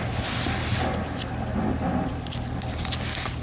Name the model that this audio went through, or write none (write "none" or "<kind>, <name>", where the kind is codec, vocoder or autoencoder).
none